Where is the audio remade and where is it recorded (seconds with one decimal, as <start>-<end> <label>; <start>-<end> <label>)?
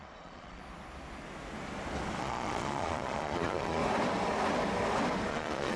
0.0-0.6 remade; 0.6-2.2 recorded; 2.2-3.8 remade; 3.8-5.3 recorded; 5.3-5.8 remade